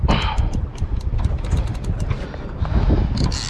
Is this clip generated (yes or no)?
no